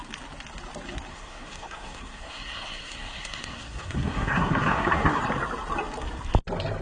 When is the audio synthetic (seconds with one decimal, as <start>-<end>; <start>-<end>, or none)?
1.1-5.2